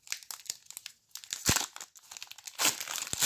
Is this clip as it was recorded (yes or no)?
yes